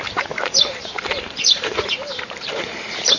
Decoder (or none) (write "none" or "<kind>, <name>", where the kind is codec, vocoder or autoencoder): vocoder, BigVGAN v2